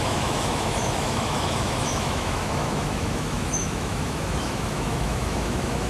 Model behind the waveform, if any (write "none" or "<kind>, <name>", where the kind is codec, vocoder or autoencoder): autoencoder, DAC-VAE